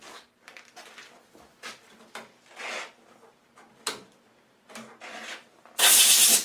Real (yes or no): yes